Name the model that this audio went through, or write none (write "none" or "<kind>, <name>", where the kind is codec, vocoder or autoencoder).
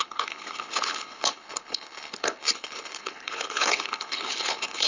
codec, HILCodec